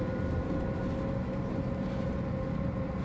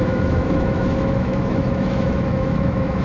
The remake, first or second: second